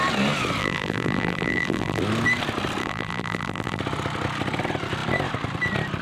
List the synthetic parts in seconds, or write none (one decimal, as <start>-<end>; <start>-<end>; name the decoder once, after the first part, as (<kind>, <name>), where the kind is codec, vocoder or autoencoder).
0.6-2.0 (vocoder, BigVGAN v2); 2.8-3.8